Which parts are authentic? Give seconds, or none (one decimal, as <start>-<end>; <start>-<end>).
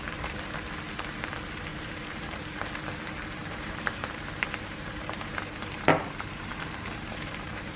0.0-1.7; 2.7-3.4